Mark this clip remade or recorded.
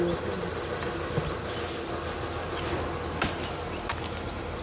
recorded